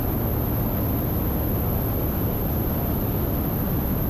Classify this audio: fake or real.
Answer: real